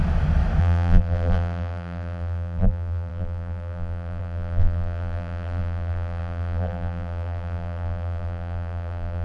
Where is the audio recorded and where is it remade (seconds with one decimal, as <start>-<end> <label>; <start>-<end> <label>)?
0.0-0.6 recorded; 0.6-9.2 remade